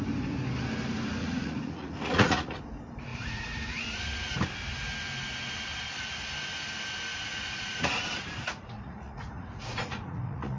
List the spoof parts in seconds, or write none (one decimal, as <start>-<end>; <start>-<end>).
1.2-2.6; 3.1-3.6; 7.1-8.0; 8.4-10.6